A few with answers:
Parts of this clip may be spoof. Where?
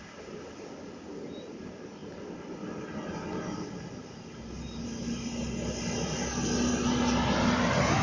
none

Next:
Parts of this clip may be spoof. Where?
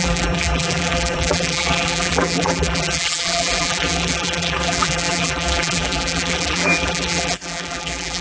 0.0-8.2 (vocoder, BigVGAN v2)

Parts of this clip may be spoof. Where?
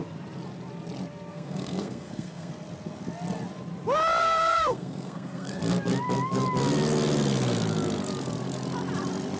1.3-2.5 (codec, SNAC); 4.2-5.6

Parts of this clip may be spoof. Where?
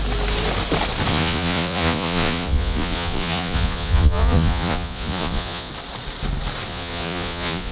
1.1-5.7 (vocoder, Vocos); 6.7-7.7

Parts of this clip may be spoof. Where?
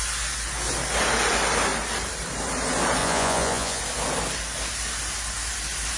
3.0-3.8 (vocoder, Vocos)